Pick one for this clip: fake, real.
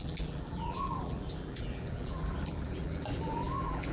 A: fake